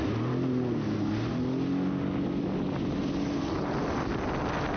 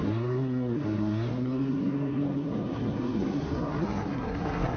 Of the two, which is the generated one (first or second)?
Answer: second